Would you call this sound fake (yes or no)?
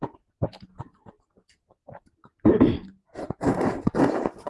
yes